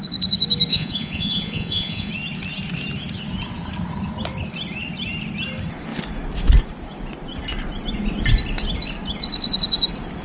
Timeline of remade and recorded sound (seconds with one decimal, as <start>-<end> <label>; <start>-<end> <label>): 0.0-0.7 recorded; 0.7-2.1 remade; 2.1-10.2 recorded